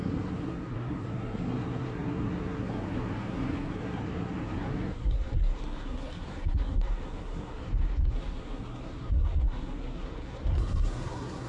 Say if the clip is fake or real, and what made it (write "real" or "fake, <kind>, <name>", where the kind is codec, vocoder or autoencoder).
fake, codec, SNAC